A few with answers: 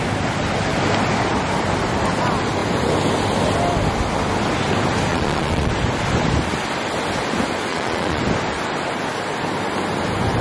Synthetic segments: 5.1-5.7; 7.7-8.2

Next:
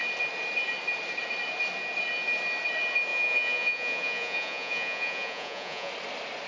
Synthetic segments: 3.1-5.9

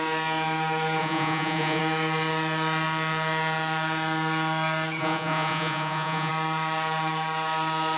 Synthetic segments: 1.0-1.8; 5.0-6.3

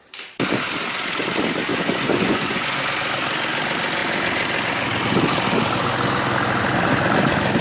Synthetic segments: 1.7-2.8

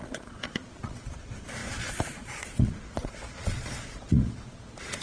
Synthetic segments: 0.0-5.0